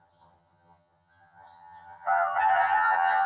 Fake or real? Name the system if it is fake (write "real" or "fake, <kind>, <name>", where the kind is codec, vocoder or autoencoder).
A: fake, vocoder, HiFi-GAN